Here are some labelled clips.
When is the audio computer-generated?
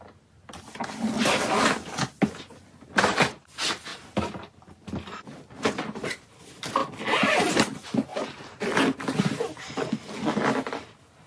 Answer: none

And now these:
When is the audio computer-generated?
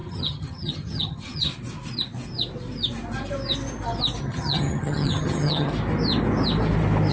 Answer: 0.0-1.5 (vocoder, HiFi-GAN); 4.2-5.7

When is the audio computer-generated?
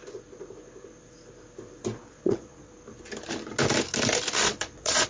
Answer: 2.1-2.7 (vocoder, Vocos); 4.4-5.1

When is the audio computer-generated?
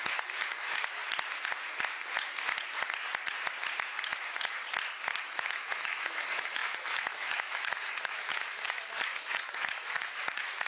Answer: 0.0-1.0 (autoencoder, DAC-VAE); 5.2-10.7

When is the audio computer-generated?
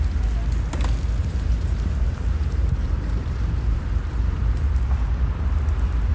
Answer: 1.2-4.4 (vocoder, BigVGAN v2)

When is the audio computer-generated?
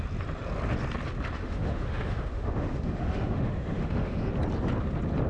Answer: 1.4-4.3 (autoencoder, DAC-VAE)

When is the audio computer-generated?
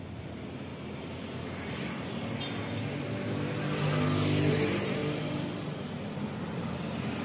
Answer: 0.0-0.7 (vocoder, BigVGAN v2); 4.5-5.0; 6.4-7.2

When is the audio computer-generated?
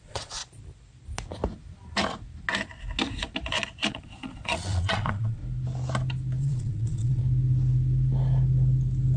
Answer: 0.0-0.4 (vocoder, Vocos); 3.9-5.4; 6.4-7.2